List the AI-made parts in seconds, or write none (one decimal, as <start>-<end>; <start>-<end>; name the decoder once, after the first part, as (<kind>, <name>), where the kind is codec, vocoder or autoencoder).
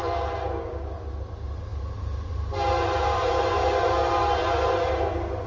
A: none